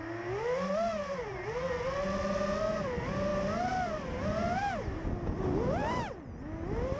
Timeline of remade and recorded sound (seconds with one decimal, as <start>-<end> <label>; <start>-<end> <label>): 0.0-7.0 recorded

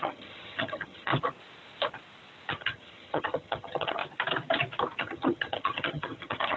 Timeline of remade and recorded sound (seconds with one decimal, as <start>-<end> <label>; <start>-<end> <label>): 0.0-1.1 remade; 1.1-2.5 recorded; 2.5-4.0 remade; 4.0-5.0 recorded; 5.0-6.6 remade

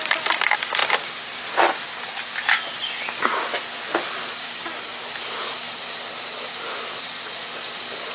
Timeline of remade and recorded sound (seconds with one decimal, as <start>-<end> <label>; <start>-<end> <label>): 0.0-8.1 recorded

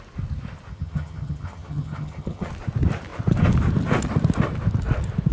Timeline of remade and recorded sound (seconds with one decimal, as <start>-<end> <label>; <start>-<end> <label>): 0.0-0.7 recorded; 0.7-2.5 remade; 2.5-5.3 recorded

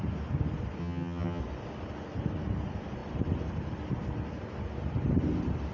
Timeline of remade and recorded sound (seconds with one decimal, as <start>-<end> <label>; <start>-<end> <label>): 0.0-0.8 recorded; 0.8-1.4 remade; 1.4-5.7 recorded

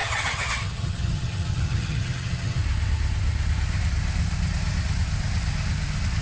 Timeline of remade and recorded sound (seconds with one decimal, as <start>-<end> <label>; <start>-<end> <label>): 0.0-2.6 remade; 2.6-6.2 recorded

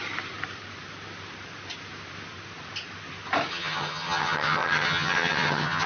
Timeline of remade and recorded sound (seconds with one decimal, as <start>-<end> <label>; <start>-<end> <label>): 0.0-3.5 recorded; 3.5-5.9 remade